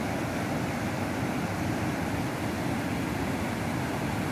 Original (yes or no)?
yes